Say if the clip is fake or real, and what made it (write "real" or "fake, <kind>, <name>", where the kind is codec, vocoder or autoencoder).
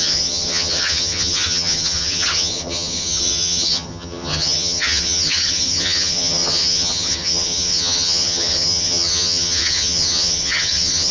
fake, vocoder, HiFi-GAN